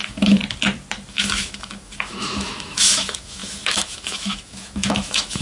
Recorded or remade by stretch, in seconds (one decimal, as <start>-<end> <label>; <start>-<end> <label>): 0.0-0.4 remade; 0.4-1.1 recorded; 1.1-5.4 remade